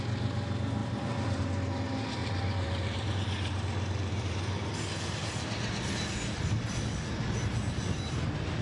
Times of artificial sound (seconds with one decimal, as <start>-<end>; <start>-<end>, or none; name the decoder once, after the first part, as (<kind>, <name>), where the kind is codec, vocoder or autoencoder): 0.8-1.4 (vocoder, BigVGAN v2); 2.2-5.4